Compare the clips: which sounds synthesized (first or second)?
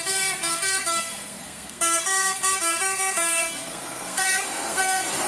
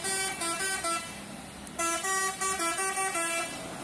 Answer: first